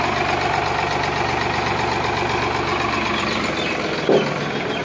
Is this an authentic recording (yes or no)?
yes